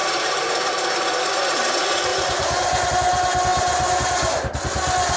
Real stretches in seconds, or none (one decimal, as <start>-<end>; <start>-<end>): 1.3-2.1; 2.9-3.5; 4.6-5.2